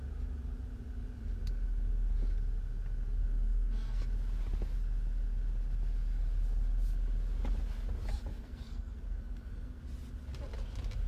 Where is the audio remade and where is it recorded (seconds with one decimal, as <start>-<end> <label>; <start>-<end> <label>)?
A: 0.0-3.2 recorded; 3.2-4.0 remade; 4.0-8.3 recorded; 8.3-9.8 remade; 9.8-11.1 recorded